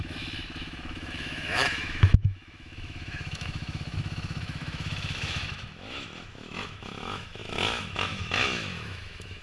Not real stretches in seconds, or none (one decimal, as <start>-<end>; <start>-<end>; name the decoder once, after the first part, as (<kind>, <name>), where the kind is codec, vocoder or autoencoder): 0.0-9.4 (autoencoder, DAC-VAE)